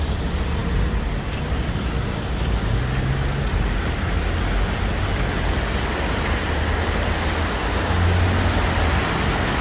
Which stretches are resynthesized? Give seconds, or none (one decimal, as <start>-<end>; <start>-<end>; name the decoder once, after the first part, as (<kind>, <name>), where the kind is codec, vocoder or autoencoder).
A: none